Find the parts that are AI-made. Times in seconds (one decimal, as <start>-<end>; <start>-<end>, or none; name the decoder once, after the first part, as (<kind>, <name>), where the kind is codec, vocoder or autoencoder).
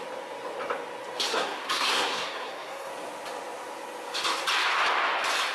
1.3-2.9 (codec, SNAC)